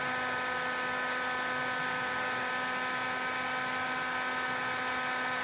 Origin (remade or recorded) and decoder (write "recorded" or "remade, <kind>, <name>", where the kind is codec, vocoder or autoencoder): recorded